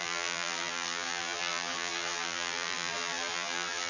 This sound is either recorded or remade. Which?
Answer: remade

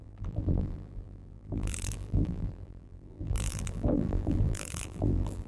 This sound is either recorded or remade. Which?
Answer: remade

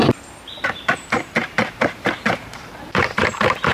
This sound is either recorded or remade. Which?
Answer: remade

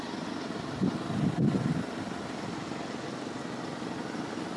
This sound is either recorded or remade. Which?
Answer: recorded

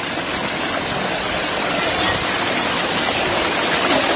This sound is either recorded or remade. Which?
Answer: recorded